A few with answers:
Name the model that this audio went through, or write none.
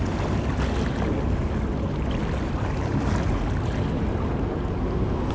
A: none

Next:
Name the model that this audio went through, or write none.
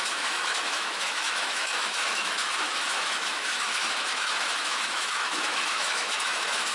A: autoencoder, DAC-VAE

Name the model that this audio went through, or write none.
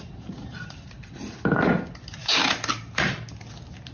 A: none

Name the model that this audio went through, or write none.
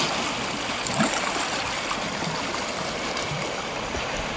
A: none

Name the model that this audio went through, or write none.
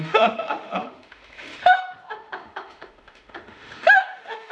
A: autoencoder, DAC-VAE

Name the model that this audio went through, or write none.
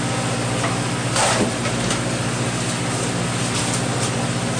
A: none